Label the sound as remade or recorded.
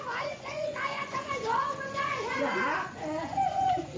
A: remade